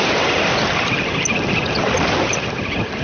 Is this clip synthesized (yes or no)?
no